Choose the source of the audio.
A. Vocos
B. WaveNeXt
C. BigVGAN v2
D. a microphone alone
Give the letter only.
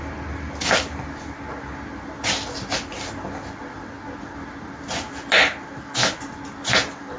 D